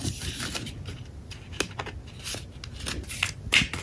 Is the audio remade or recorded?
recorded